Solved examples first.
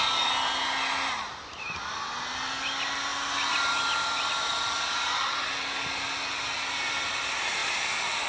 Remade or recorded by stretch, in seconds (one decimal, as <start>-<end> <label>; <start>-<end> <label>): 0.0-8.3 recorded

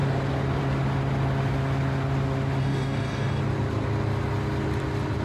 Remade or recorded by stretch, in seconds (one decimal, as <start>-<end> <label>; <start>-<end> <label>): 0.0-2.6 recorded; 2.6-3.4 remade; 3.4-5.2 recorded

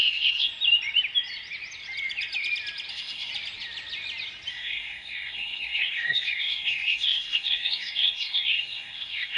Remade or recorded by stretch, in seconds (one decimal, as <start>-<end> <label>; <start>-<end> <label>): 0.0-0.5 remade; 0.5-2.9 recorded; 2.9-3.3 remade; 3.3-4.5 recorded; 4.5-9.4 remade